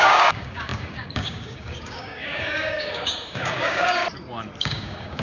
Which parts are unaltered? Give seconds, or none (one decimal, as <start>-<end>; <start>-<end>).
4.0-4.6